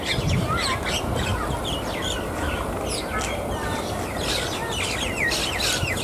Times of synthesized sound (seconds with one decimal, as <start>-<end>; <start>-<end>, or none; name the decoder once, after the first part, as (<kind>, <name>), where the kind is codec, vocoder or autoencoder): 1.3-4.5 (vocoder, BigVGAN v2)